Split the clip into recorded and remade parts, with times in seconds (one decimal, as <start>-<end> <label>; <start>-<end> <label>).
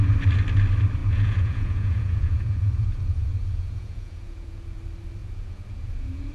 0.0-1.0 recorded; 1.0-4.8 remade; 4.8-5.2 recorded; 5.2-6.3 remade